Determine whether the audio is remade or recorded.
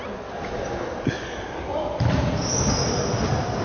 recorded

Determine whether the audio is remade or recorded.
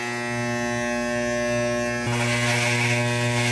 recorded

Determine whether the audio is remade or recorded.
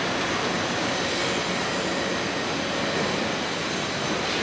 recorded